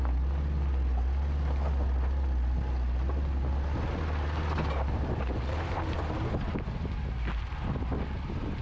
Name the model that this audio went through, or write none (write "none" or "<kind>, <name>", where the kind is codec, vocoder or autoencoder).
none